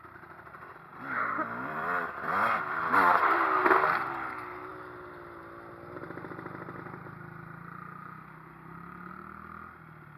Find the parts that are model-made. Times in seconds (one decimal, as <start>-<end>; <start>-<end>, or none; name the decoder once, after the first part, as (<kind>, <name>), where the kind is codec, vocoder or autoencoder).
none